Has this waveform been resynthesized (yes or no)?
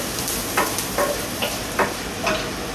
no